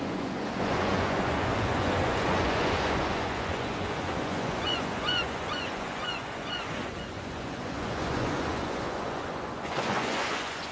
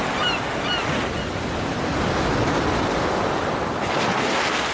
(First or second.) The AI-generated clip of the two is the first